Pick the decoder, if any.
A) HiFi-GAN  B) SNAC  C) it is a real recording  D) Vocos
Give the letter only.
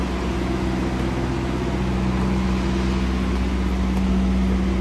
C